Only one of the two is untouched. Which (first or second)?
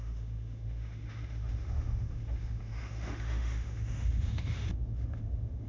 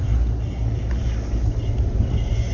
second